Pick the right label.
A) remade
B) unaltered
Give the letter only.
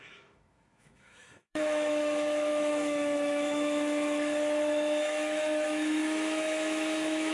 A